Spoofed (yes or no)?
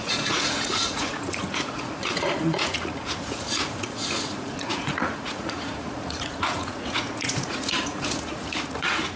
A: yes